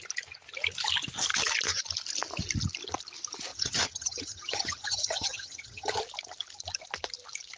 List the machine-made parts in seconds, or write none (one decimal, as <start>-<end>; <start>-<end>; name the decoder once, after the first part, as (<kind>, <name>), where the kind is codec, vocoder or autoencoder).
3.5-6.0 (vocoder, HiFi-GAN)

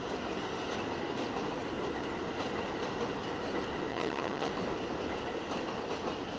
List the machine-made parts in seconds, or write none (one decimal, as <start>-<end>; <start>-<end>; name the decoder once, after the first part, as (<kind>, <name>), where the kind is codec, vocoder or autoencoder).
3.9-4.5 (vocoder, HiFi-GAN)

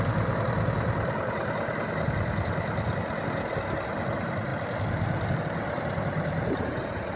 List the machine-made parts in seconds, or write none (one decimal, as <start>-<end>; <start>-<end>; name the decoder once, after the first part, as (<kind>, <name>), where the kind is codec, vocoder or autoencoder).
none

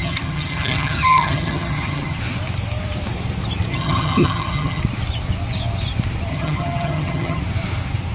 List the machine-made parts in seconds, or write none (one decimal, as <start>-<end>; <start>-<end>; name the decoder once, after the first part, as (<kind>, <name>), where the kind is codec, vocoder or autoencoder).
0.0-2.2 (vocoder, HiFi-GAN); 3.7-4.8; 6.3-7.4